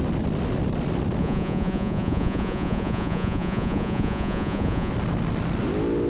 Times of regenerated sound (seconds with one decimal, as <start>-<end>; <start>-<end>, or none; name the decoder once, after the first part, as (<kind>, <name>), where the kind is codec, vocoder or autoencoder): 1.2-4.9 (vocoder, Vocos)